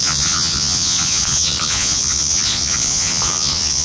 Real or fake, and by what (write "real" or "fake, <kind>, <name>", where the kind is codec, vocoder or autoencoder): fake, vocoder, Vocos